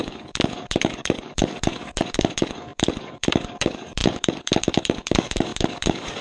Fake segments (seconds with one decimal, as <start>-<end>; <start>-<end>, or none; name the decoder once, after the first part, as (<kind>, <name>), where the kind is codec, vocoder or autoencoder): 0.0-6.2 (codec, DAC)

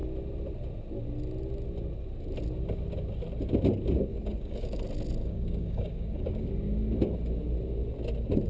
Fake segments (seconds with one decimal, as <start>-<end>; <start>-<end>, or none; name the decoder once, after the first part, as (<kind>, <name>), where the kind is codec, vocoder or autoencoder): 4.1-4.8 (codec, DAC); 5.2-6.5

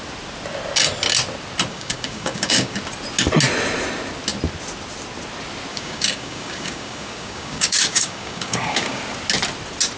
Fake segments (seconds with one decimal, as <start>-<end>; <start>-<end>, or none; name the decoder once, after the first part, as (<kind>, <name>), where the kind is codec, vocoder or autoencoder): 1.7-2.8 (codec, DAC); 5.7-9.0